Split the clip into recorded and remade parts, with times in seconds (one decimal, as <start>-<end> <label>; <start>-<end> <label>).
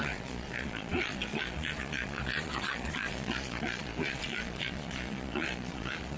0.0-6.2 remade